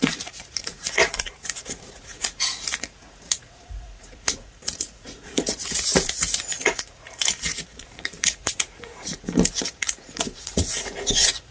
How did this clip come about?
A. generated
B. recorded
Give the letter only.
A